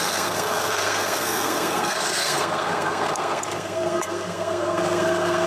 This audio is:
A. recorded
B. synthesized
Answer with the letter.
B